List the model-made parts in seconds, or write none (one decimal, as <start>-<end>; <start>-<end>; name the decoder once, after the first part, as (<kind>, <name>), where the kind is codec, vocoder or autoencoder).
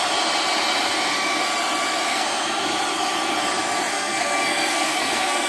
2.1-2.6 (codec, SNAC); 3.9-5.5